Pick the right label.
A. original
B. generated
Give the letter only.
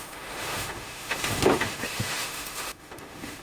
B